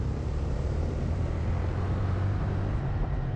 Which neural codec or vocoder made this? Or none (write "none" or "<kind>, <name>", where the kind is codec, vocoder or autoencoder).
vocoder, BigVGAN v2